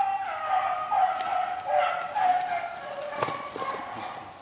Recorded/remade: recorded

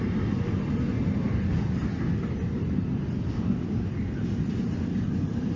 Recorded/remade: recorded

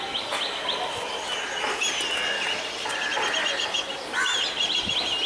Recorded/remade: recorded